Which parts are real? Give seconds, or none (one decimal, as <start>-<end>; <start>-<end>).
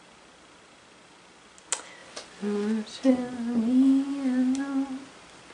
0.0-5.5